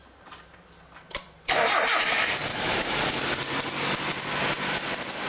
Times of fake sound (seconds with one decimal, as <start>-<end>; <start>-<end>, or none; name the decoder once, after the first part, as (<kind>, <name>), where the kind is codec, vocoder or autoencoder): 2.5-3.2 (autoencoder, DAC-VAE)